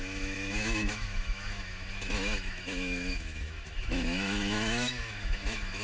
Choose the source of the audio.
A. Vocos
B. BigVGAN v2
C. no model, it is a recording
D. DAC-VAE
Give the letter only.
D